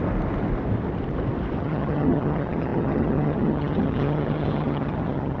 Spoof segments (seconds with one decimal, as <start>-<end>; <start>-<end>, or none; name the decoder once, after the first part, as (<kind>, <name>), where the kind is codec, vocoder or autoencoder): 1.6-5.4 (vocoder, HiFi-GAN)